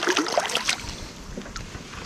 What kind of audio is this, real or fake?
real